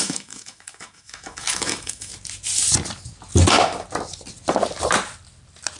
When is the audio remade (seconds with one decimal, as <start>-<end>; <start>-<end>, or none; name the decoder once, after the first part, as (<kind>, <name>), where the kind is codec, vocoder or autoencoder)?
0.0-2.1 (autoencoder, DAC-VAE)